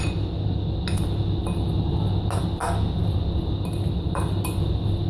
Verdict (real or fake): real